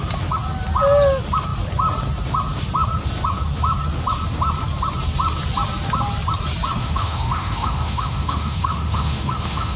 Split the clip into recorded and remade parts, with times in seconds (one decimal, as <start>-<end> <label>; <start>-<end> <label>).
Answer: 0.0-6.8 recorded; 6.8-9.8 remade

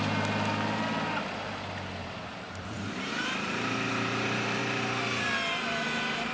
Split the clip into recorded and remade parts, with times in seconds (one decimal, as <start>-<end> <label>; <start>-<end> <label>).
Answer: 0.0-2.0 recorded; 2.0-4.6 remade; 4.6-6.3 recorded

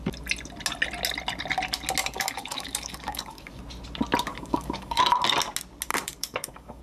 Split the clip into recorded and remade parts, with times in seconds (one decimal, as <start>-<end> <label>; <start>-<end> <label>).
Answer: 0.0-2.0 recorded; 2.0-3.6 remade; 3.6-4.3 recorded; 4.3-5.0 remade; 5.0-5.9 recorded; 5.9-6.8 remade

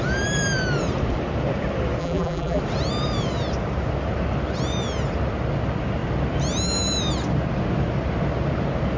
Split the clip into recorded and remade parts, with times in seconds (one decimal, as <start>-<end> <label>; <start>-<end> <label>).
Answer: 0.0-2.0 recorded; 2.0-2.6 remade; 2.6-9.0 recorded

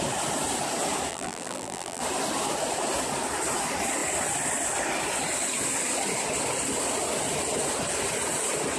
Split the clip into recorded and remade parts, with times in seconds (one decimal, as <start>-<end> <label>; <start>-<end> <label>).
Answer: 0.0-1.1 recorded; 1.1-2.0 remade; 2.0-8.8 recorded